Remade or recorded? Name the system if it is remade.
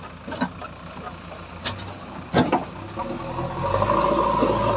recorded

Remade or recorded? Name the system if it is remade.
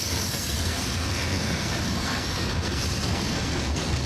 remade, codec, SNAC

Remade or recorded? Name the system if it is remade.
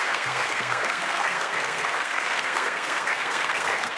remade, codec, SNAC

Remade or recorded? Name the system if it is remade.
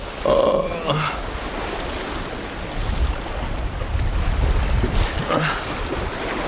recorded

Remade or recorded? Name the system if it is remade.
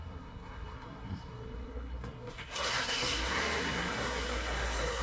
remade, codec, SNAC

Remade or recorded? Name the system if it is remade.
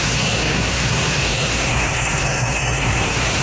remade, codec, SNAC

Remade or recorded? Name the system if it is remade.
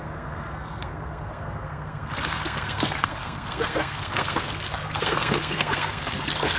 remade, codec, SNAC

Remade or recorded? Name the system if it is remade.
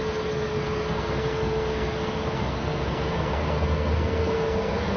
remade, codec, SNAC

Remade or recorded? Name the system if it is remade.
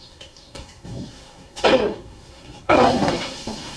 remade, codec, SNAC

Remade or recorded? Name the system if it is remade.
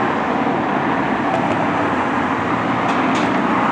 recorded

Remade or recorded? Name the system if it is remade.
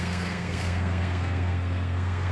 remade, codec, SNAC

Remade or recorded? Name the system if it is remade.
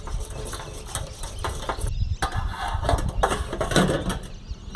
recorded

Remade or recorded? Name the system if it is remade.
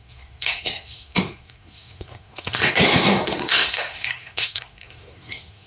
remade, codec, SNAC